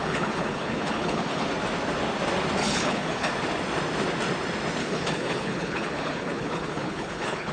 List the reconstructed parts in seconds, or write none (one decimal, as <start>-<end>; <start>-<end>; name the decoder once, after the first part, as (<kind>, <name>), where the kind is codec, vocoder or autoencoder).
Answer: 0.0-1.5 (codec, HILCodec); 2.6-3.3; 4.8-7.5